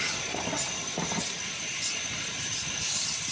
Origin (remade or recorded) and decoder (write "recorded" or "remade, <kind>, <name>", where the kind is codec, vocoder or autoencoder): recorded